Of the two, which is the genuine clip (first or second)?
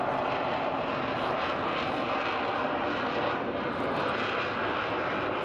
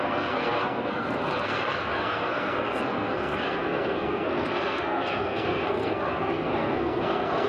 first